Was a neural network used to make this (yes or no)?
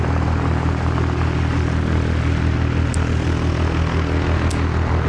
no